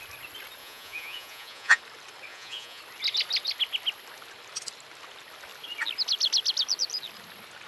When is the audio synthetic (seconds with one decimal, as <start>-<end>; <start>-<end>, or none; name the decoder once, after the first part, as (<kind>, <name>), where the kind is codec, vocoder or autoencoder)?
0.6-1.8 (vocoder, Vocos); 2.3-2.8

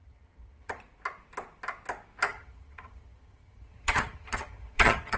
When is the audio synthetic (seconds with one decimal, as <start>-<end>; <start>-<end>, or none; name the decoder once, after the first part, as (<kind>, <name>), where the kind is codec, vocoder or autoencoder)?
0.0-0.8 (vocoder, HiFi-GAN); 2.3-5.2